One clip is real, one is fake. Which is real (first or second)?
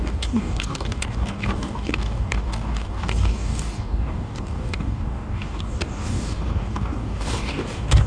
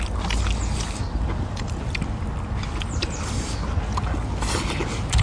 second